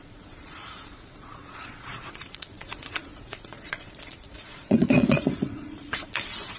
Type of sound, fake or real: fake